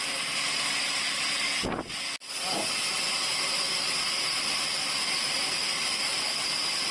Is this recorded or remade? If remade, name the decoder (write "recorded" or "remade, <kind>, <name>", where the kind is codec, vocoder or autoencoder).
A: recorded